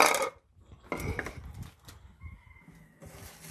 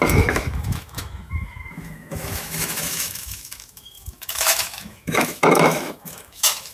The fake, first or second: second